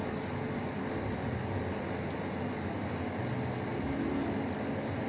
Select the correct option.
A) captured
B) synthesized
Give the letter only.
A